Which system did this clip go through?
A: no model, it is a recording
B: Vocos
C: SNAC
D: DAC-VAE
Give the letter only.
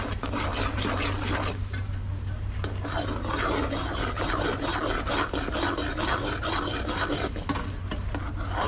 A